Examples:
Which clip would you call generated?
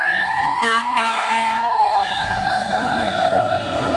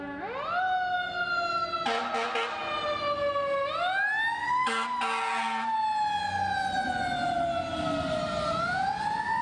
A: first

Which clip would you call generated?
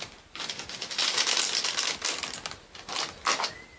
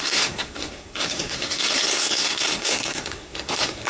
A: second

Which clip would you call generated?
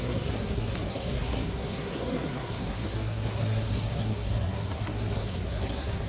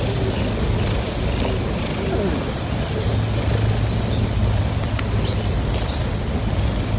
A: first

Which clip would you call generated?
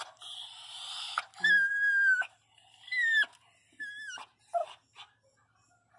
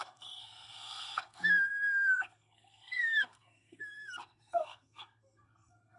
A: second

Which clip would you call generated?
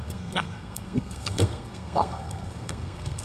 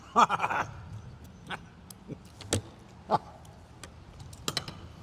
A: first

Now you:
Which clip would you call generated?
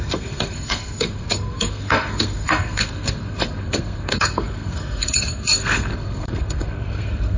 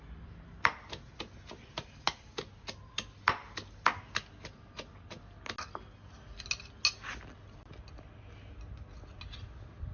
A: first